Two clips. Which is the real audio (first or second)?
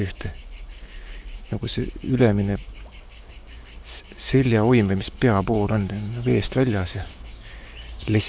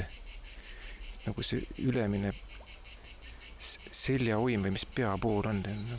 second